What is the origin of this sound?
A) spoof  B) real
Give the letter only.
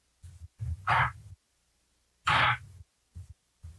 B